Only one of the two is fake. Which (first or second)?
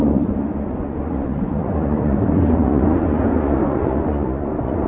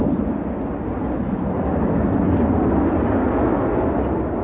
first